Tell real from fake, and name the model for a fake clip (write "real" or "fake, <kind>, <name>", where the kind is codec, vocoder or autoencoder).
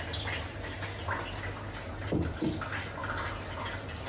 real